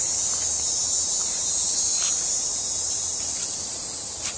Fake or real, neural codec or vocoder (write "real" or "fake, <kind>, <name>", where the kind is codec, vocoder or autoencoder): fake, vocoder, BigVGAN v2